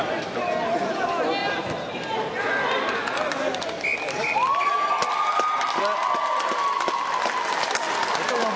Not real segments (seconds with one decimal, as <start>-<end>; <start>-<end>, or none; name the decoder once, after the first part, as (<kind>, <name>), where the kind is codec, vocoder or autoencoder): none